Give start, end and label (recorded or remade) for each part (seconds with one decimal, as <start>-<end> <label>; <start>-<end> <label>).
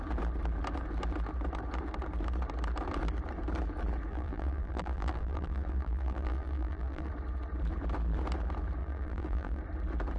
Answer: 0.0-4.1 recorded; 4.1-7.1 remade; 7.1-8.8 recorded; 8.8-9.6 remade; 9.6-10.2 recorded